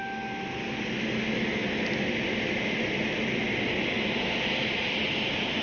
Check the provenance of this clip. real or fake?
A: real